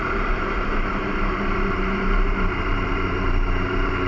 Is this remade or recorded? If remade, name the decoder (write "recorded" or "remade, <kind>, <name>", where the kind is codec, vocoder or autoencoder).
remade, vocoder, BigVGAN v2